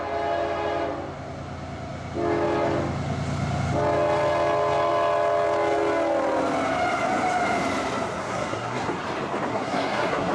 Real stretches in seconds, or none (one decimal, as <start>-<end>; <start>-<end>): 0.0-8.2; 9.0-9.5